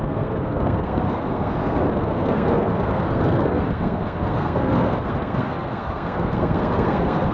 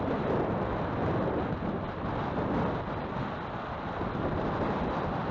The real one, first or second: second